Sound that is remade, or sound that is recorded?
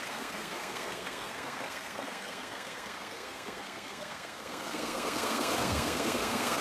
remade